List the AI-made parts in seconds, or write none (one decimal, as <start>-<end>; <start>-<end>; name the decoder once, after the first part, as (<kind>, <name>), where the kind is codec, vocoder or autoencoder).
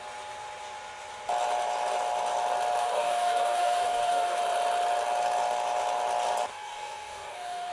2.8-4.4 (codec, DAC); 6.5-7.7